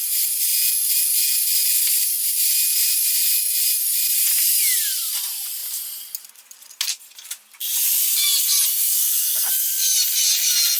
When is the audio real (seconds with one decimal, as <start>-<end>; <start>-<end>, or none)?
0.0-8.7; 9.5-10.8